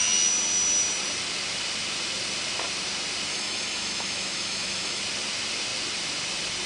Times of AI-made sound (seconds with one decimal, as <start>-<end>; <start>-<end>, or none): 3.3-5.0

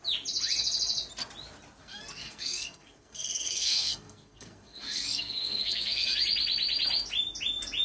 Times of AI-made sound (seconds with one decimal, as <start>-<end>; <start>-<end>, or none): 1.8-6.1

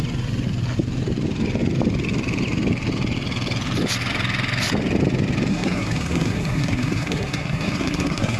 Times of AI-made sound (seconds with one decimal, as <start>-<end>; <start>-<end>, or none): 5.5-8.4

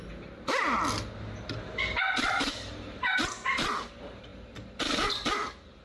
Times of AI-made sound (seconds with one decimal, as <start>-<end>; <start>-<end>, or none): none